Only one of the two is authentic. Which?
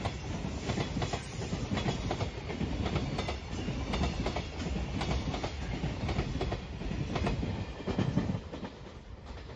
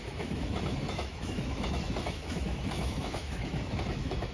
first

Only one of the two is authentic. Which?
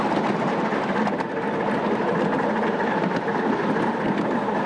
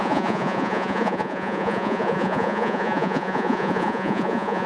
first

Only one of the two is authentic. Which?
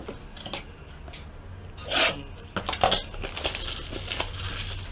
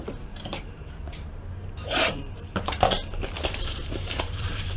first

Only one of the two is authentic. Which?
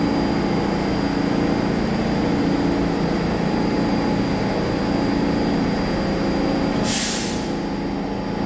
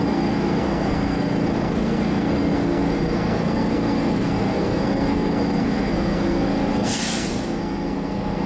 first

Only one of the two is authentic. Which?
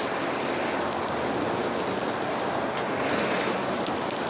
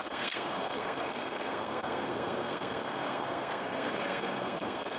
first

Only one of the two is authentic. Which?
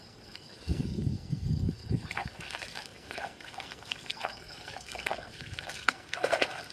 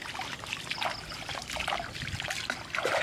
second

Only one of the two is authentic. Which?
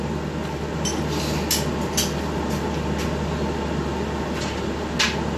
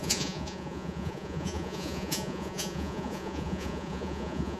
first